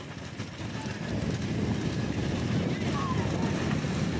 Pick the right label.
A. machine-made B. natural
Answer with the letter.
B